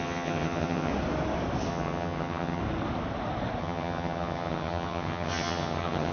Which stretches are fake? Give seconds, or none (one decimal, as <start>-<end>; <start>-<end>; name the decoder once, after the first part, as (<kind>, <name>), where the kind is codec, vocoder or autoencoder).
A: 0.0-0.9 (vocoder, HiFi-GAN); 1.7-2.6; 3.6-6.1